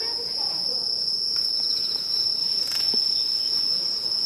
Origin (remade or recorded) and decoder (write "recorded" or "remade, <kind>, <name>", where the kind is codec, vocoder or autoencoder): remade, vocoder, Vocos